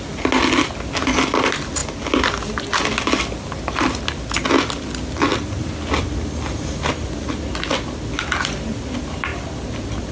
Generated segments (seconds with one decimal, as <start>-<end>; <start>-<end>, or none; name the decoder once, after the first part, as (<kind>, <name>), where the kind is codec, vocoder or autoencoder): 5.3-6.0 (vocoder, BigVGAN v2); 9.3-10.1